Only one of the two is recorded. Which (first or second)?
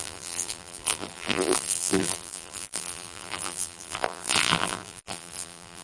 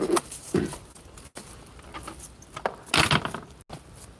second